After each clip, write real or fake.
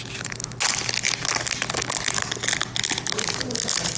real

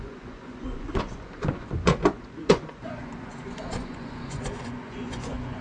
fake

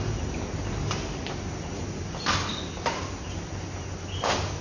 real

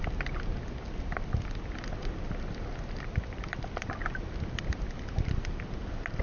real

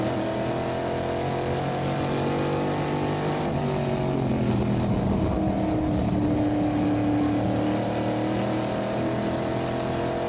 real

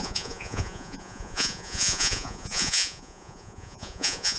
fake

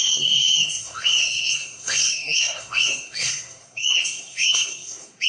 fake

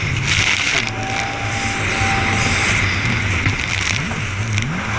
real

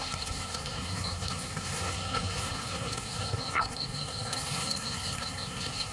fake